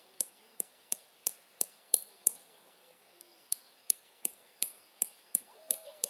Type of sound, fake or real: fake